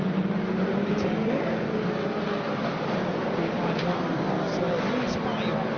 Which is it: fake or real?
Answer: real